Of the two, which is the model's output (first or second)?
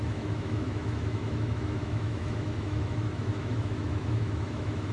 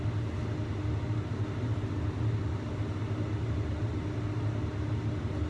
first